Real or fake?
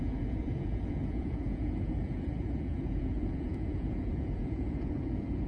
fake